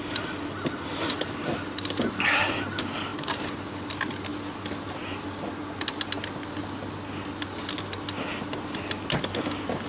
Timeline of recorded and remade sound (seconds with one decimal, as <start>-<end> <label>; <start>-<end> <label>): 0.0-9.9 recorded